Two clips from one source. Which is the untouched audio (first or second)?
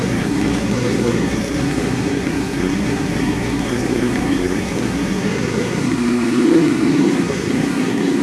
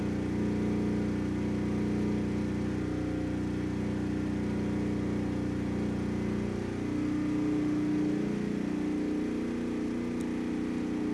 second